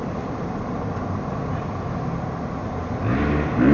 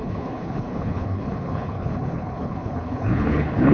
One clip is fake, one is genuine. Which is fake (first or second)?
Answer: second